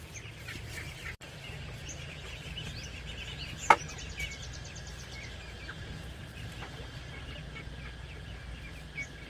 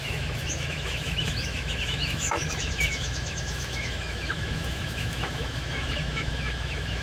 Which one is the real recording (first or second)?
first